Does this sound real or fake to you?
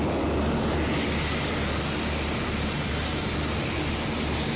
real